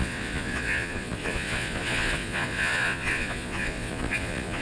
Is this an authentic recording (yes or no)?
no